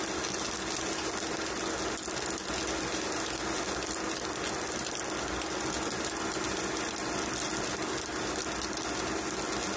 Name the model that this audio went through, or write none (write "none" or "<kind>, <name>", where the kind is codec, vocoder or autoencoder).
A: none